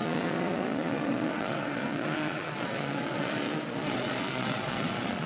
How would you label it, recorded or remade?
remade